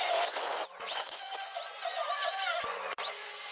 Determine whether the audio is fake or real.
fake